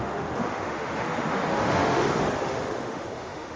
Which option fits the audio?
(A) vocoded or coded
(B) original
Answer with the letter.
A